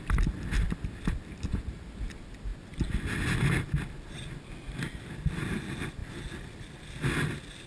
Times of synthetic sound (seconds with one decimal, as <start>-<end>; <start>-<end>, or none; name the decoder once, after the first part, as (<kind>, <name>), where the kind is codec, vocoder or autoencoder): none